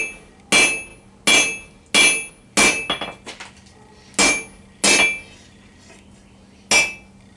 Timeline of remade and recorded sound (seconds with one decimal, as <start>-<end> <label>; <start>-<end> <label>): 0.0-7.4 recorded